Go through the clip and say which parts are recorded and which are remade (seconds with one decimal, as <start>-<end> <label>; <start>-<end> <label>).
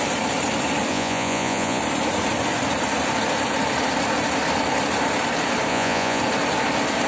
0.0-0.9 recorded; 0.9-1.8 remade; 1.8-5.7 recorded; 5.7-6.2 remade; 6.2-7.1 recorded